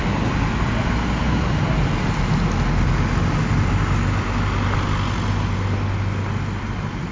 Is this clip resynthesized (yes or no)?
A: no